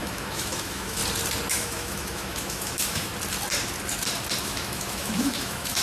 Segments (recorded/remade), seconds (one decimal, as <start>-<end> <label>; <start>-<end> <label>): 0.0-1.0 remade; 1.0-1.5 recorded; 1.5-3.1 remade; 3.1-4.4 recorded; 4.4-5.8 remade